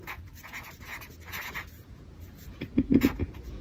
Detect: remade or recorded remade